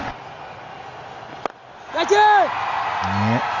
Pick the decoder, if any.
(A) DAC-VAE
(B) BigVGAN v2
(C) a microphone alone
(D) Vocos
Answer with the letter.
C